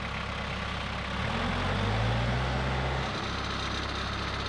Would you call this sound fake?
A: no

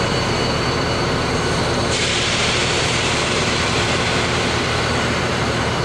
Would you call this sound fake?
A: yes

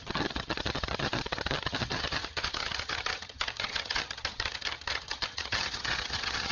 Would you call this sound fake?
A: yes